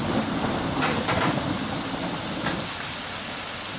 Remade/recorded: recorded